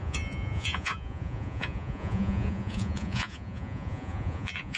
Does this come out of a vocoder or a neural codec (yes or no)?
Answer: yes